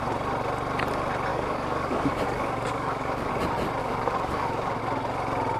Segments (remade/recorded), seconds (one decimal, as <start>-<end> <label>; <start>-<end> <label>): 0.0-1.3 recorded; 1.3-3.3 remade; 3.3-3.8 recorded; 3.8-4.8 remade; 4.8-5.6 recorded